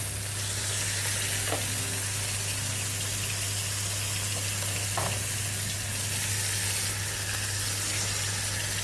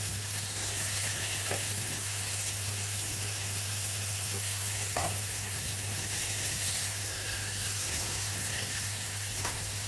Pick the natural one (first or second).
first